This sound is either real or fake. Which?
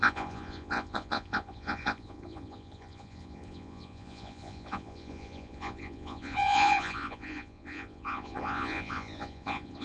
fake